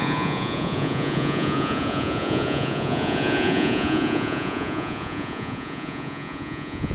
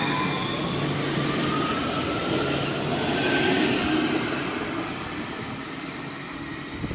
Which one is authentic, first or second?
second